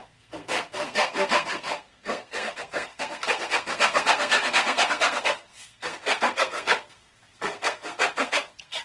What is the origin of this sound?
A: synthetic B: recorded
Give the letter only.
A